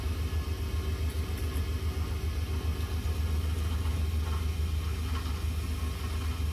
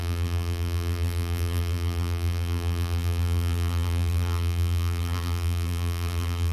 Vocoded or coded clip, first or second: second